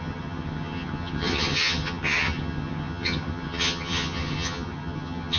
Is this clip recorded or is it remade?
remade